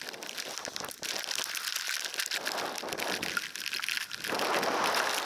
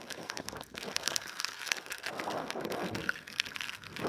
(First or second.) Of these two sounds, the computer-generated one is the second